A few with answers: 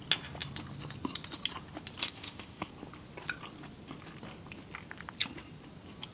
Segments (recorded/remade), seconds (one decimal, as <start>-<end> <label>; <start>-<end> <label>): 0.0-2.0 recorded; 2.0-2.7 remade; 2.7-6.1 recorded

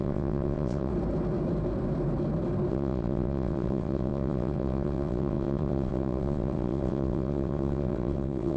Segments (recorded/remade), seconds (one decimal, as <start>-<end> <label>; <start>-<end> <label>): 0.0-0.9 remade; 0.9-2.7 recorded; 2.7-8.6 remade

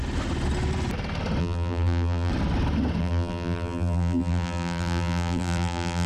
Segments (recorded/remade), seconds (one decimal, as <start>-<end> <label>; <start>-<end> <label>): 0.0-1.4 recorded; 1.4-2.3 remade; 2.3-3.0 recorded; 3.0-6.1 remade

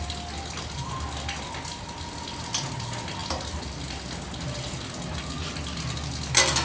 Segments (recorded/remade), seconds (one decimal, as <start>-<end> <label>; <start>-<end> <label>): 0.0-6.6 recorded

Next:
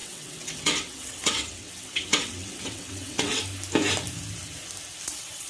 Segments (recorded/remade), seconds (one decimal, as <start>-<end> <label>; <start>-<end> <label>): 0.0-3.4 remade; 3.4-5.1 recorded; 5.1-5.5 remade

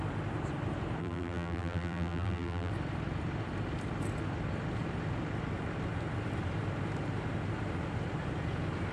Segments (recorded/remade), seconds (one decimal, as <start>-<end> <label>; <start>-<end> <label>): 0.0-1.0 recorded; 1.0-2.7 remade; 2.7-8.9 recorded

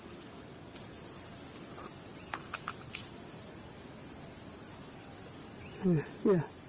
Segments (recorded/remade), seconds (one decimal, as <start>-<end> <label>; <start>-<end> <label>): 0.0-6.7 recorded

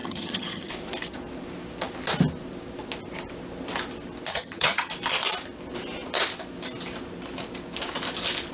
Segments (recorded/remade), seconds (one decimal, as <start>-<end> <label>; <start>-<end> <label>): 0.0-0.7 remade; 0.7-4.3 recorded; 4.3-4.9 remade; 4.9-8.5 recorded